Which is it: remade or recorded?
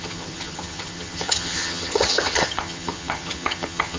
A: remade